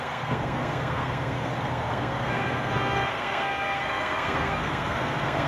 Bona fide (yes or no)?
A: no